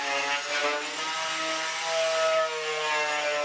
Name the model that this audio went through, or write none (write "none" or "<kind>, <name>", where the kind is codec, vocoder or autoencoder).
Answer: none